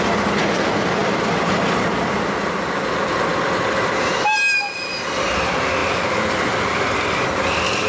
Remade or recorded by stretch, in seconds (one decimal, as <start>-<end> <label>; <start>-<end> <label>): 0.0-1.0 recorded; 1.0-1.8 remade; 1.8-3.3 recorded; 3.3-4.0 remade; 4.0-7.9 recorded